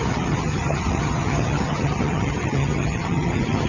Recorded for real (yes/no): no